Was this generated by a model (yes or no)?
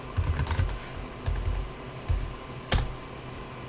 no